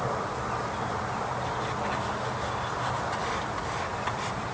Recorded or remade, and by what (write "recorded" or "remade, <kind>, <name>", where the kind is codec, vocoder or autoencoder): recorded